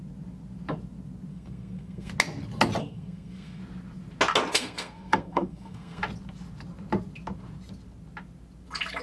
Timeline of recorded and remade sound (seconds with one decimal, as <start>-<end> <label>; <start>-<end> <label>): 0.0-1.3 recorded; 1.3-2.1 remade; 2.1-2.8 recorded; 2.8-3.6 remade; 3.6-4.5 recorded; 4.5-6.0 remade; 6.0-9.0 recorded